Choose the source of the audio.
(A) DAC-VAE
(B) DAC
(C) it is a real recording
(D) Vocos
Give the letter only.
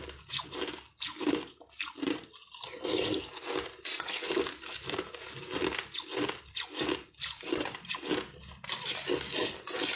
C